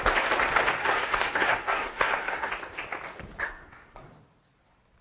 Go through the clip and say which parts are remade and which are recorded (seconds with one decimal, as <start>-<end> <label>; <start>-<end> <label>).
0.0-0.8 recorded; 0.8-2.5 remade; 2.5-3.4 recorded; 3.4-4.1 remade; 4.1-5.0 recorded